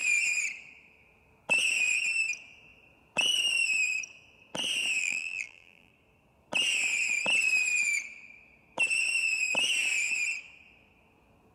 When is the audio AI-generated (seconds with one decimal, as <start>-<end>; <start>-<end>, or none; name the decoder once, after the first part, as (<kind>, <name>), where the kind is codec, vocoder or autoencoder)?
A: 5.0-5.9 (vocoder, BigVGAN v2)